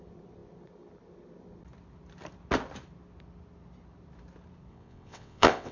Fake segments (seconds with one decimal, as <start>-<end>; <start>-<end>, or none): 4.7-5.7